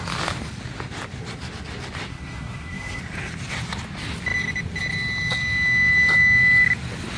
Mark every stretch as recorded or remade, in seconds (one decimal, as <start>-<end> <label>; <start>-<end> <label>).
0.0-2.1 recorded; 2.1-3.0 remade; 3.0-7.2 recorded